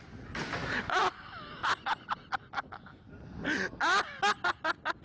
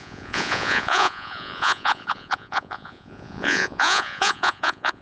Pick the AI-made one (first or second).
second